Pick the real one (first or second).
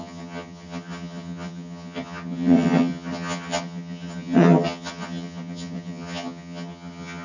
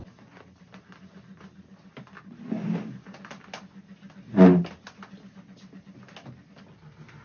second